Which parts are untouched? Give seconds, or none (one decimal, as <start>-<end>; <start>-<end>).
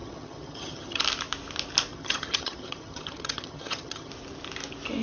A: 1.0-1.9; 4.1-5.0